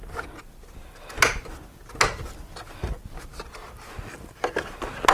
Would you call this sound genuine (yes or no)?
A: yes